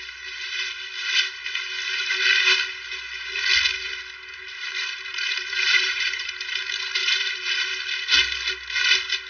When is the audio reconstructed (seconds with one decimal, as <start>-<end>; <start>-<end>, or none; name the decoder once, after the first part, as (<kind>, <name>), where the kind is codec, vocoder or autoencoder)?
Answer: 5.1-6.6 (vocoder, BigVGAN v2); 7.0-7.7